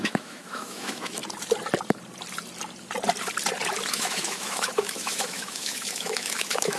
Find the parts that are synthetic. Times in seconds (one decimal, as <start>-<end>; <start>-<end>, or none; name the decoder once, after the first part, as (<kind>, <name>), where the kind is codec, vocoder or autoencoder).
0.0-1.2 (autoencoder, DAC-VAE); 3.9-6.8